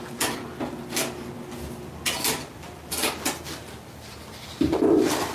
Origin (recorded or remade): recorded